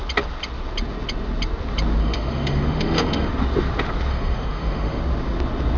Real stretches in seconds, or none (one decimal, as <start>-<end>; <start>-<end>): 0.0-2.0; 3.3-4.1; 5.0-5.8